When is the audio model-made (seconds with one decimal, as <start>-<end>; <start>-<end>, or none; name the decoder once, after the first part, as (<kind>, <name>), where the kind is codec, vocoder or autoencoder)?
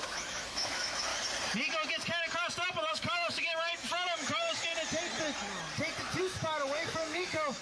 0.0-1.1 (autoencoder, DAC-VAE); 2.9-4.7; 6.2-7.6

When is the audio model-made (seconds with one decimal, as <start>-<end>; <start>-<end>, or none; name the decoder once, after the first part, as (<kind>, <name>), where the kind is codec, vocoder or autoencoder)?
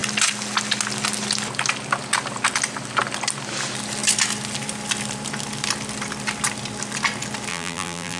7.5-8.2 (vocoder, BigVGAN v2)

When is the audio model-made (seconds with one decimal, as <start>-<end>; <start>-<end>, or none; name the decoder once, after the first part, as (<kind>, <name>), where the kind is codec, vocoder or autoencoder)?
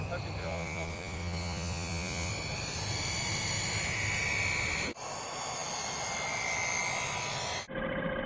0.4-2.3 (vocoder, Vocos)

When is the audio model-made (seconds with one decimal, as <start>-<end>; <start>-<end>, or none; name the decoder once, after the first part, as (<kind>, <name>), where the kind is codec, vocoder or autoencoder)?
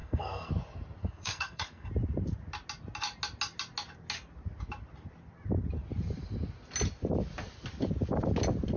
0.0-0.5 (codec, SNAC); 1.0-1.9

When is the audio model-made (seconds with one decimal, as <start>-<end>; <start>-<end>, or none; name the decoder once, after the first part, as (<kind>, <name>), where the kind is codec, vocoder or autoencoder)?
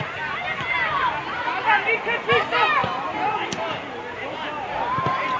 none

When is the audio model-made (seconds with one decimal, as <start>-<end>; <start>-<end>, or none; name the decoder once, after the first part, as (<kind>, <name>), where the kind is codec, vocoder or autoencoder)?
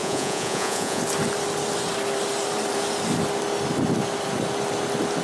0.0-1.0 (vocoder, Vocos)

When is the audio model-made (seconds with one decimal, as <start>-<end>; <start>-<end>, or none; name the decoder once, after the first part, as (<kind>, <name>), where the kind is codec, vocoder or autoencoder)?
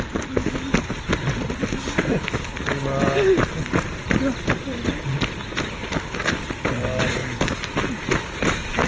none